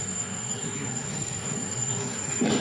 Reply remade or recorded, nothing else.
remade